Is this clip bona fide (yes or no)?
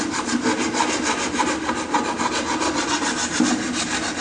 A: yes